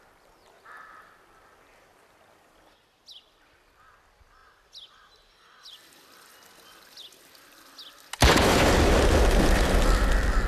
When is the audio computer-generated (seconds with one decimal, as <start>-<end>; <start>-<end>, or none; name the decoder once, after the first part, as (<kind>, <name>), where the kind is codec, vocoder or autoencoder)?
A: none